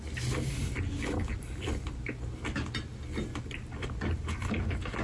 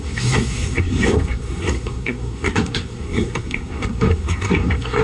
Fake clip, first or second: second